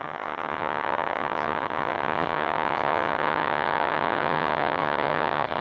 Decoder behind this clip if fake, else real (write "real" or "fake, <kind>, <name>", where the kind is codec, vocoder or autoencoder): fake, vocoder, HiFi-GAN